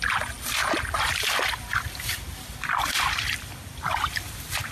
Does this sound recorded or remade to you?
recorded